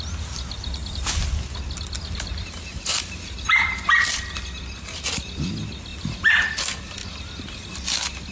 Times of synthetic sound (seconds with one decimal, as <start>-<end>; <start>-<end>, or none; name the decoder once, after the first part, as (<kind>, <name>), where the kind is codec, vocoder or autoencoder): 2.7-3.5 (vocoder, BigVGAN v2)